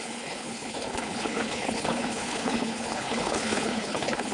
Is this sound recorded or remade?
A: remade